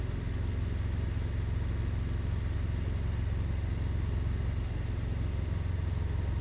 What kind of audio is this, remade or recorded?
recorded